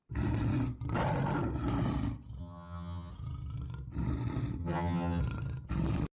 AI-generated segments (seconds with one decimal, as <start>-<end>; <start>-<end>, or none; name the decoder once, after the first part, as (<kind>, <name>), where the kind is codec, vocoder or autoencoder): 2.4-3.1 (vocoder, HiFi-GAN); 4.6-5.2